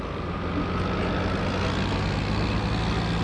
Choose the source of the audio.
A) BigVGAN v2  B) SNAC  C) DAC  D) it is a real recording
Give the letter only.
D